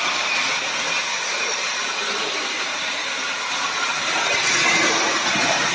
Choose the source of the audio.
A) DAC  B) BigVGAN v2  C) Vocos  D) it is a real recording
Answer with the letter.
B